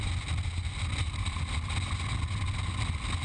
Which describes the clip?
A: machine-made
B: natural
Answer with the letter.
B